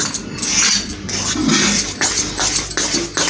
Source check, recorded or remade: recorded